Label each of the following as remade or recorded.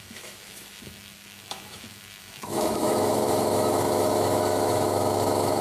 remade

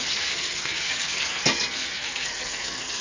remade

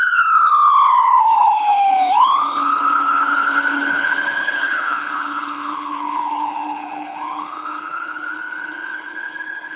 remade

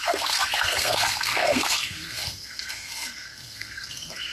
remade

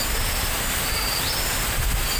recorded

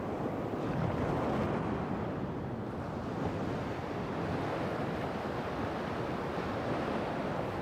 recorded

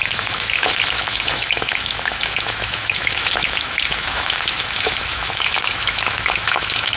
remade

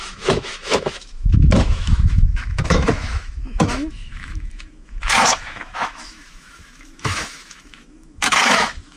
remade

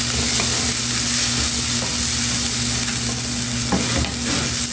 recorded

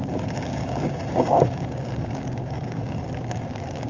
remade